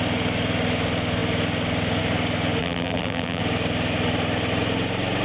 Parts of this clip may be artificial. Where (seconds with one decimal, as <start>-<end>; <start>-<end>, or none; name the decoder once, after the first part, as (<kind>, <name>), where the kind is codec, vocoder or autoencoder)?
2.6-3.4 (vocoder, BigVGAN v2)